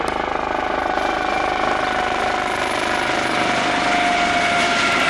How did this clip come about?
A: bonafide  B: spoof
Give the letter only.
A